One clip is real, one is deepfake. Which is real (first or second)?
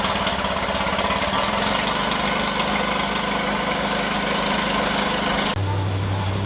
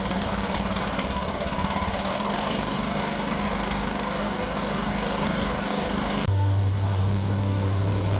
first